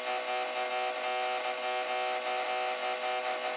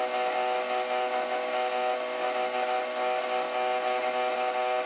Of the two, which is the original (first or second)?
first